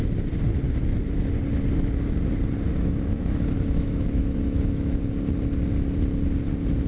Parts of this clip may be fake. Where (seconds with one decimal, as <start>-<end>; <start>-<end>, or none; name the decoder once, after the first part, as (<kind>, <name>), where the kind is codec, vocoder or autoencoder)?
2.7-5.0 (autoencoder, DAC-VAE)